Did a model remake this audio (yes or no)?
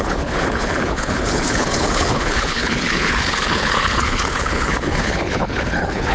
yes